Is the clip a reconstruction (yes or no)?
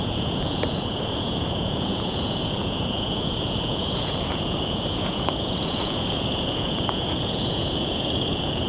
yes